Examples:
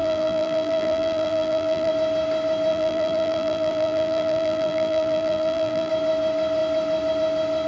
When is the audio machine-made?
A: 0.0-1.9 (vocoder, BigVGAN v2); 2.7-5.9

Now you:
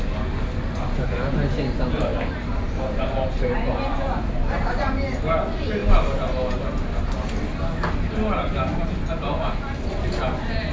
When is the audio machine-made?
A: 2.1-4.7 (vocoder, BigVGAN v2)

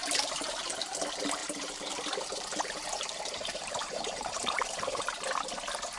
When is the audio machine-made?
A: 0.0-0.5 (vocoder, BigVGAN v2); 1.4-5.0

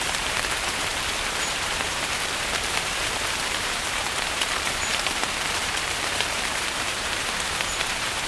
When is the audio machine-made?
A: 0.0-8.3 (vocoder, BigVGAN v2)